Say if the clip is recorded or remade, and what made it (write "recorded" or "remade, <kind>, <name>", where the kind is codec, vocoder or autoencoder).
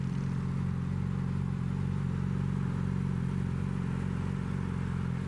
recorded